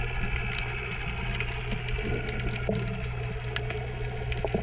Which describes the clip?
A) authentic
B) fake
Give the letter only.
A